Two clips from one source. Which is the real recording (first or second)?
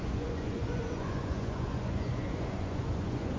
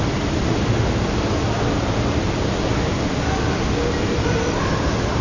second